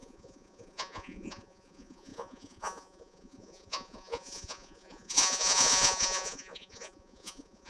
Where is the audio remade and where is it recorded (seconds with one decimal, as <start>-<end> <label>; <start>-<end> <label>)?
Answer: 0.0-7.7 remade